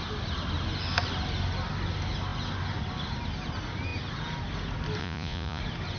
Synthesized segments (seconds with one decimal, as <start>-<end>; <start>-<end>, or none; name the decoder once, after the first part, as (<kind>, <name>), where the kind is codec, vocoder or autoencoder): 5.0-5.6 (vocoder, Vocos)